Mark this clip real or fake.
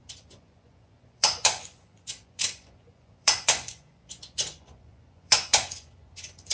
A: fake